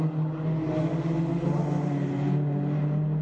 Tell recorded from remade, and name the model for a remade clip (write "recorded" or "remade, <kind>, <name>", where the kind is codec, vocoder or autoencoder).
recorded